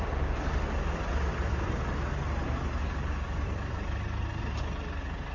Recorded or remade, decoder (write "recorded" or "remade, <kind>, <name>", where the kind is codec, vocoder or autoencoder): recorded